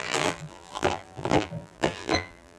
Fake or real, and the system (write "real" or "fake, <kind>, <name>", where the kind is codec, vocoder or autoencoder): fake, vocoder, BigVGAN v2